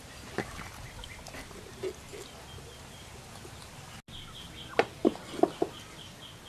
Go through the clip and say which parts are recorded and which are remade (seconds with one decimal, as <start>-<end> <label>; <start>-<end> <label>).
0.0-6.5 recorded